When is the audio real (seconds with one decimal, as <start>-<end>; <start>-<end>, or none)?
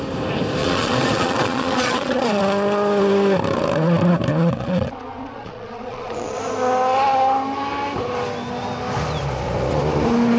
0.0-0.6; 2.4-4.3; 6.4-10.4